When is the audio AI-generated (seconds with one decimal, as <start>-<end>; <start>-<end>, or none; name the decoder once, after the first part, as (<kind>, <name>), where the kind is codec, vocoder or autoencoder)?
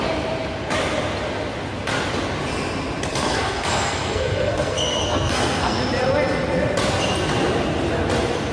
3.1-5.8 (codec, SNAC)